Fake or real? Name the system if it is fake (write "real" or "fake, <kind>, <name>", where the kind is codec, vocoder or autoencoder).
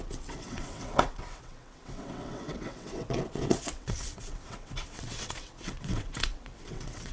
fake, vocoder, WaveNeXt